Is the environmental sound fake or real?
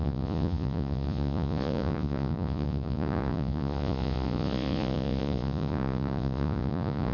fake